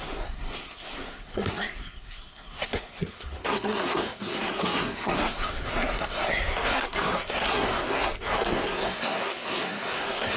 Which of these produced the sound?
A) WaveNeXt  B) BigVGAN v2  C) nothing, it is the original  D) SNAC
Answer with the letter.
D